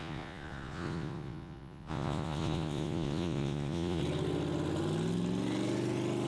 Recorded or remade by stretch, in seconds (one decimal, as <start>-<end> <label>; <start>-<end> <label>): 0.0-4.0 remade; 4.0-6.3 recorded